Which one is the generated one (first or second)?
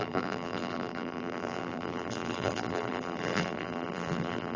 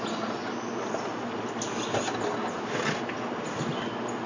first